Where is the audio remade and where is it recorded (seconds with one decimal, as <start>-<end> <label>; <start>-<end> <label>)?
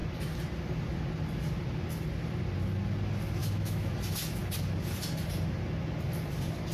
0.0-3.4 recorded; 3.4-3.9 remade; 3.9-6.7 recorded